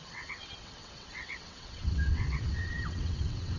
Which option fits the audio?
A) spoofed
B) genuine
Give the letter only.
A